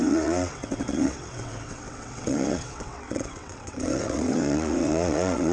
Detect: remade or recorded remade